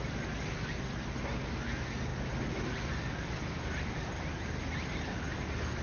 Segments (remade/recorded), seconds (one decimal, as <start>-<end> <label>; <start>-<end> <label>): 0.0-5.8 recorded